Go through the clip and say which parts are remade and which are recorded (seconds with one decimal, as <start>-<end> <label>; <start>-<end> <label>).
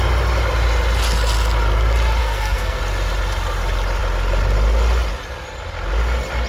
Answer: 0.0-2.2 recorded; 2.2-2.8 remade; 2.8-6.5 recorded